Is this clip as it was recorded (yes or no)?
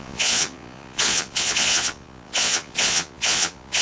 no